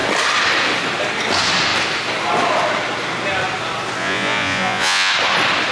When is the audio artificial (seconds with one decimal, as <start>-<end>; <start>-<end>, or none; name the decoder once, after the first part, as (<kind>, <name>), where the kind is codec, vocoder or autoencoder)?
4.0-5.1 (vocoder, Vocos)